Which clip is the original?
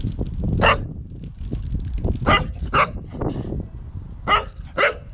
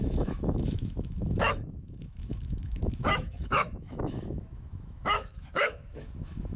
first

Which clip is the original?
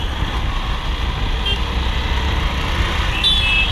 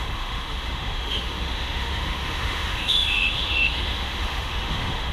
first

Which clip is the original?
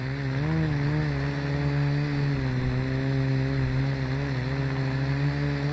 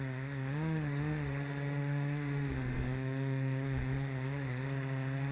first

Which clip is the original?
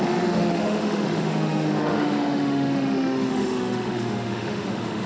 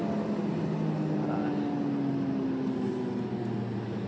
second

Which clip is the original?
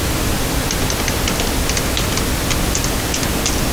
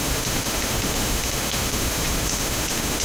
first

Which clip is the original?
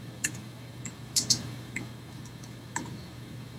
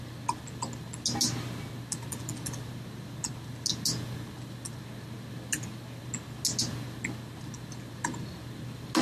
second